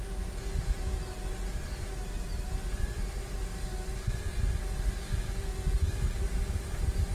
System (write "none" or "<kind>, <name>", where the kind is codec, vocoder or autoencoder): none